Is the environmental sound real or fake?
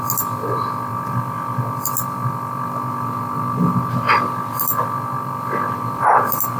real